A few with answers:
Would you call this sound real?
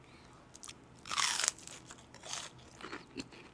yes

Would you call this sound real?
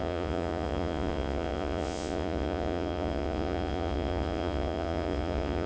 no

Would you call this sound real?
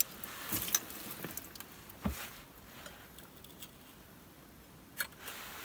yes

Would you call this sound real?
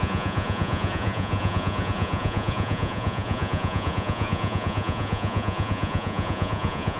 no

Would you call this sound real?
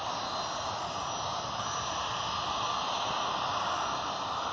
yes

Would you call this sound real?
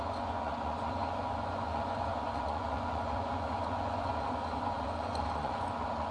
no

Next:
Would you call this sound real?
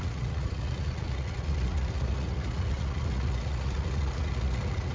no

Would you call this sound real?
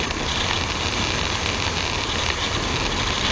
yes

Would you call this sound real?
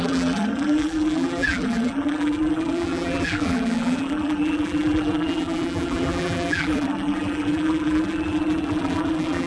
no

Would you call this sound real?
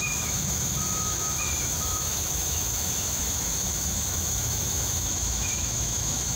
no